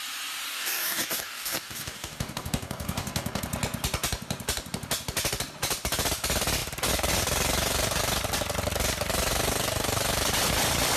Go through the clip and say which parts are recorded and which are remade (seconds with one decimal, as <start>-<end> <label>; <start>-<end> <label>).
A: 0.0-0.5 recorded; 0.5-3.4 remade; 3.4-11.0 recorded